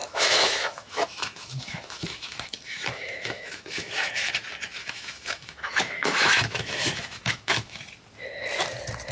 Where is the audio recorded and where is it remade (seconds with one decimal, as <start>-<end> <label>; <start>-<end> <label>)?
0.0-4.3 remade; 4.3-4.8 recorded; 4.8-7.8 remade; 7.8-9.1 recorded